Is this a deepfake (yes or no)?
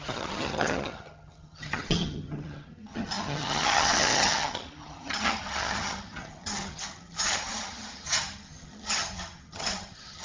yes